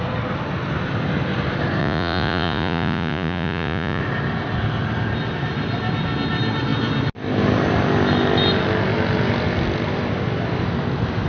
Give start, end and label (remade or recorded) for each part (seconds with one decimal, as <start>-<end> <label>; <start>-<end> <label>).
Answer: 0.0-1.8 recorded; 1.8-4.0 remade; 4.0-11.3 recorded